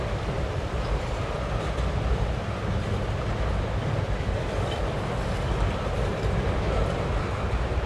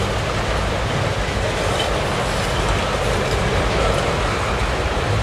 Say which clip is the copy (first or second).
first